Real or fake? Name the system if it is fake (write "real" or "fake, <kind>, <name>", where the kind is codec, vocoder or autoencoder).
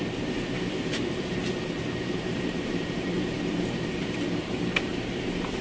fake, vocoder, BigVGAN v2